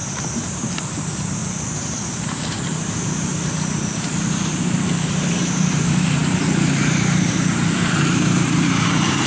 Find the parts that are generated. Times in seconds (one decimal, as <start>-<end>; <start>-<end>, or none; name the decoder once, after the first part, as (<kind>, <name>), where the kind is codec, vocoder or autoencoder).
0.0-1.4 (vocoder, BigVGAN v2); 2.1-9.3